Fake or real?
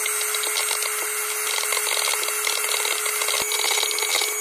real